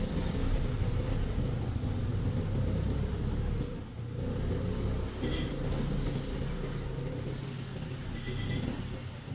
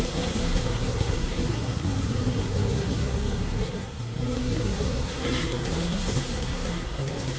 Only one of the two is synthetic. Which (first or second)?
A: second